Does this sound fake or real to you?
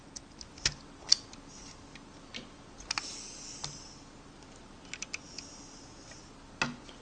real